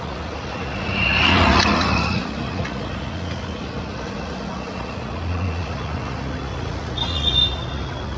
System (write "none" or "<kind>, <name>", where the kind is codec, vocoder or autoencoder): vocoder, Vocos